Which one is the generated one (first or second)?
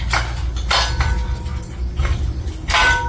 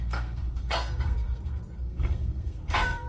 second